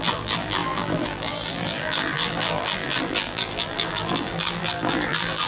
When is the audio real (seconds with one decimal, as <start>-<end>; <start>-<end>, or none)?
none